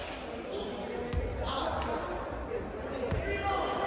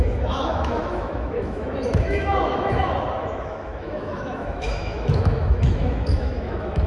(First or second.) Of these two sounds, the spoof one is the second